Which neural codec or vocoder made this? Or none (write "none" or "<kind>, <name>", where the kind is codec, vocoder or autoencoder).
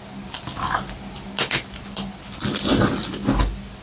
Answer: none